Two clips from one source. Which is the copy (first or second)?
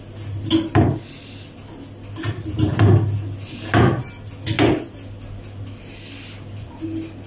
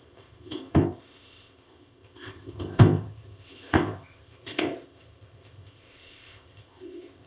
second